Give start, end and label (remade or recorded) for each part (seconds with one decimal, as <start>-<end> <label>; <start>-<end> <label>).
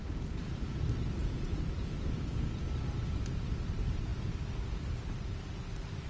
0.0-0.7 remade; 0.7-1.2 recorded; 1.2-2.5 remade; 2.5-6.1 recorded